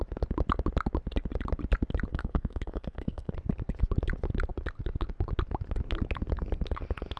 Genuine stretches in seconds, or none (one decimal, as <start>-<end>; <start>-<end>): 0.0-2.1; 3.3-7.2